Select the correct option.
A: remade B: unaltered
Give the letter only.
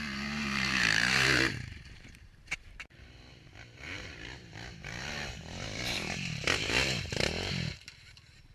A